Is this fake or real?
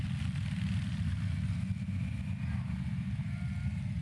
real